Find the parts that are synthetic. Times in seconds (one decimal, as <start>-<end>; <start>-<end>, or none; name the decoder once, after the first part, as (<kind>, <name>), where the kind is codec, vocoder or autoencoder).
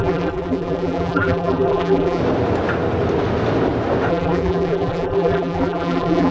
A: 0.0-2.2 (vocoder, BigVGAN v2); 4.1-6.3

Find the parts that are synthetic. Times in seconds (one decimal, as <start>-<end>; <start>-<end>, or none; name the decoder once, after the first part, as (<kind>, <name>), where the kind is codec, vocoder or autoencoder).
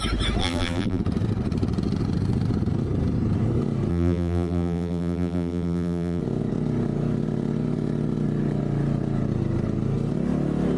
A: 0.4-1.0 (vocoder, BigVGAN v2); 3.9-6.2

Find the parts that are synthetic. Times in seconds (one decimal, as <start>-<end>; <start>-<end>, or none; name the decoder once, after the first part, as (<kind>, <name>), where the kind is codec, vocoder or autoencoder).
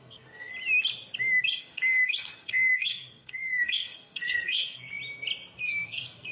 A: 0.0-0.5 (codec, SNAC); 1.6-4.9; 5.6-6.3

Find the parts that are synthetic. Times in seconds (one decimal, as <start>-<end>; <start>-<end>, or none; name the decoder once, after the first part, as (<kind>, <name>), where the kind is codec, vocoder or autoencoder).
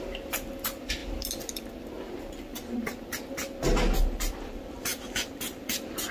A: none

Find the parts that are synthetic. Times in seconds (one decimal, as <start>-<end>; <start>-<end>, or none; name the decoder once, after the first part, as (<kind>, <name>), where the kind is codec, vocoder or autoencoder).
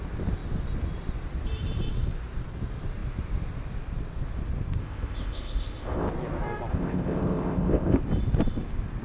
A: 4.8-6.1 (codec, ZipCodec); 6.7-8.0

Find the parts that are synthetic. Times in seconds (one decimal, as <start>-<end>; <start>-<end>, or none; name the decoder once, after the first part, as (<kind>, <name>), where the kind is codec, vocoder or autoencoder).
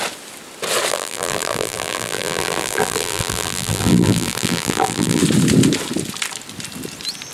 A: 0.9-5.2 (vocoder, BigVGAN v2)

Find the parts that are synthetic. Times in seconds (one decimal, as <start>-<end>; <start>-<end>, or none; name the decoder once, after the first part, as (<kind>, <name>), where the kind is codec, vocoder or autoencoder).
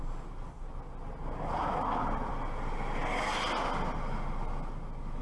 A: none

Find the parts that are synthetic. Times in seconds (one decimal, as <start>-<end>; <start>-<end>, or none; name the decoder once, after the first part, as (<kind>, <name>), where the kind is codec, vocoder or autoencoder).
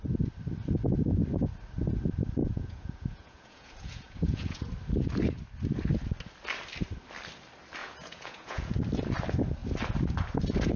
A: 2.4-4.7 (vocoder, Vocos); 7.8-8.7